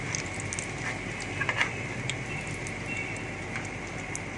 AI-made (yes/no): no